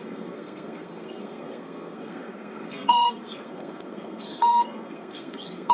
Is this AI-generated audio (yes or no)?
yes